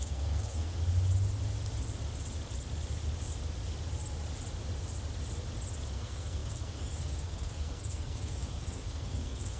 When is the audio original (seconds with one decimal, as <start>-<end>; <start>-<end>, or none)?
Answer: 0.7-5.9